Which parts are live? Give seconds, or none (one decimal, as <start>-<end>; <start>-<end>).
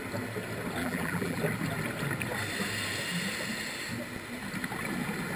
0.0-0.8; 1.4-5.4